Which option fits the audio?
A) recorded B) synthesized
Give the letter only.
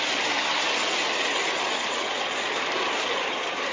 A